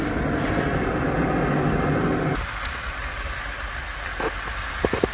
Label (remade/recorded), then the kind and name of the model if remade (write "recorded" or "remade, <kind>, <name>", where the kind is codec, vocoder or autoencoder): recorded